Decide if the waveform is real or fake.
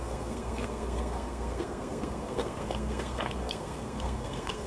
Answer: fake